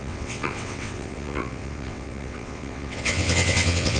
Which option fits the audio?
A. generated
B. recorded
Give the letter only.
A